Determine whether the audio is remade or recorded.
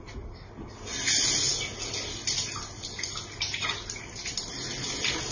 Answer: recorded